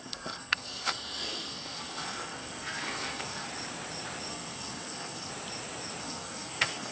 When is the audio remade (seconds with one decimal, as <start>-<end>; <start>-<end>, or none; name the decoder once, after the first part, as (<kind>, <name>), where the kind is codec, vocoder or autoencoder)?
0.0-3.5 (codec, SNAC); 4.3-5.3; 6.0-6.9